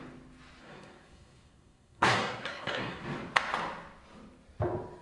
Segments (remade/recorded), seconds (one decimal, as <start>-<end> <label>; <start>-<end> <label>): 0.0-0.6 recorded; 0.6-3.0 remade; 3.0-5.0 recorded